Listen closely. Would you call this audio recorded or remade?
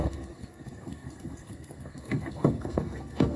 remade